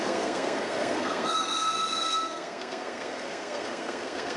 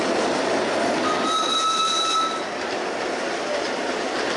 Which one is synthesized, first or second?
first